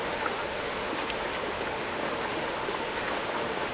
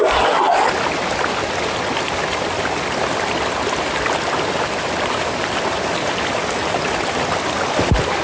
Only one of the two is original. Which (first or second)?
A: second